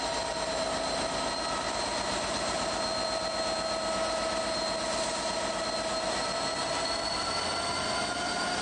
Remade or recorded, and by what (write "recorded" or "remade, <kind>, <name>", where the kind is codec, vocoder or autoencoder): recorded